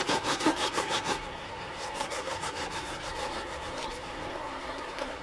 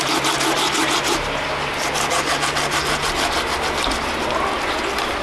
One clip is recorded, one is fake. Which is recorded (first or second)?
second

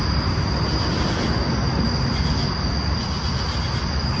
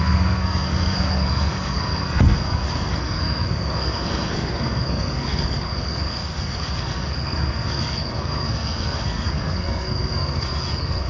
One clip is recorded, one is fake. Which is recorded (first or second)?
first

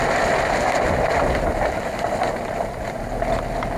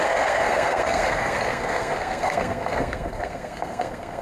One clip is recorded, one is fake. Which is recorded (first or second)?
first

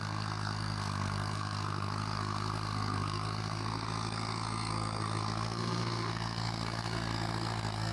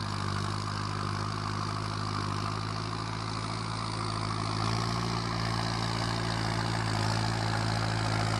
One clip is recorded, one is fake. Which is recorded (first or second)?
second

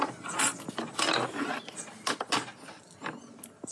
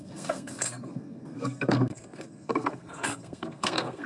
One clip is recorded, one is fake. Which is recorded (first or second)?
first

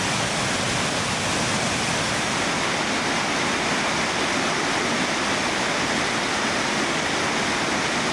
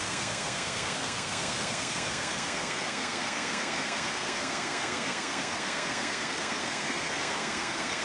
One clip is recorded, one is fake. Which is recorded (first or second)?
first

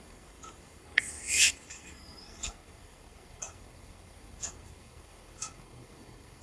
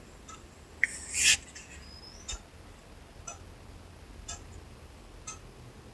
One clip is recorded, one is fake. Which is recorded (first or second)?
second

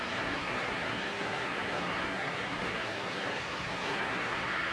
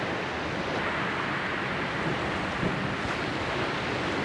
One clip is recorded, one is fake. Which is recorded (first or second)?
second